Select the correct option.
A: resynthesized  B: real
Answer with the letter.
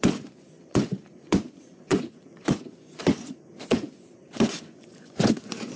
A